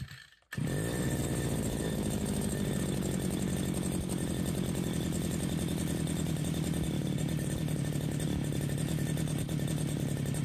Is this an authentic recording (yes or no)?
yes